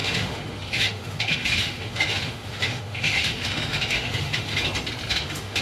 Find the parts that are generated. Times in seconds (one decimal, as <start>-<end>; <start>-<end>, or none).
0.0-4.5; 5.1-5.6